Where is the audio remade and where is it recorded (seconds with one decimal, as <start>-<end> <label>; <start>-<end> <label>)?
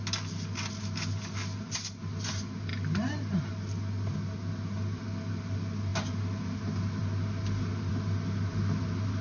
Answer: 0.0-2.7 recorded; 2.7-3.4 remade; 3.4-9.2 recorded